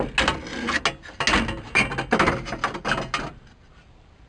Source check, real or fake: real